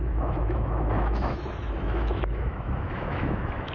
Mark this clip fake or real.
fake